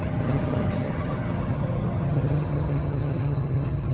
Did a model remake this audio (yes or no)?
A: yes